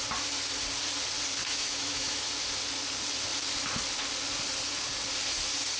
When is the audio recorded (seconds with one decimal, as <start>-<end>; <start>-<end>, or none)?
0.0-1.4; 2.3-5.8